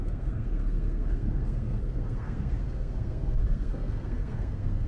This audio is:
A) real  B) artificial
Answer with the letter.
B